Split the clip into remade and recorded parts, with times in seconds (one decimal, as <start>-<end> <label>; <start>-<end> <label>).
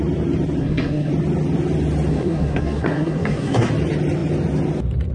0.0-0.6 recorded; 0.6-1.1 remade; 1.1-2.1 recorded; 2.1-3.7 remade; 3.7-5.1 recorded